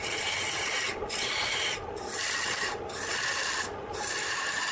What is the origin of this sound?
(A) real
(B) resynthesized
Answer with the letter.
B